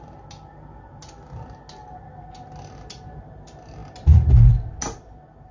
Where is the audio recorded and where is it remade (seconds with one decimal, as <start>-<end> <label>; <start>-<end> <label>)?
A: 0.0-5.5 recorded